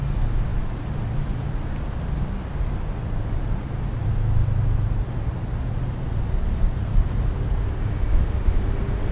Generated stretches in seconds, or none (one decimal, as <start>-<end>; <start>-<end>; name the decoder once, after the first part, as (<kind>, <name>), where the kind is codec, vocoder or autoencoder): 8.1-8.6 (autoencoder, DAC-VAE)